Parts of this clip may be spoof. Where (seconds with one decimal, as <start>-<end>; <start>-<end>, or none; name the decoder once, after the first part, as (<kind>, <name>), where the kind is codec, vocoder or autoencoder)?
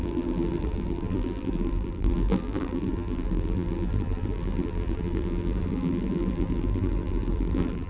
0.0-7.9 (vocoder, BigVGAN v2)